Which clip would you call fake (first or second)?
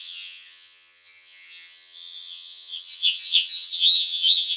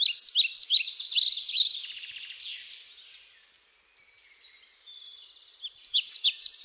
first